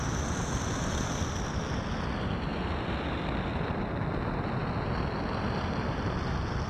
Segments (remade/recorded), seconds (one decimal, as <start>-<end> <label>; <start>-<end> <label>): 0.0-6.7 recorded